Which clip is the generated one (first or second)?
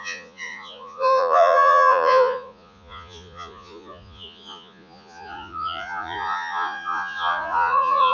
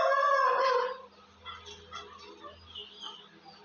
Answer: first